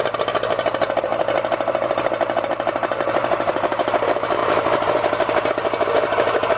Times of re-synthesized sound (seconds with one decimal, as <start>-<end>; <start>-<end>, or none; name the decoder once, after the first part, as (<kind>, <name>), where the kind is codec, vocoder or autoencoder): 3.2-3.9 (vocoder, BigVGAN v2); 4.4-5.5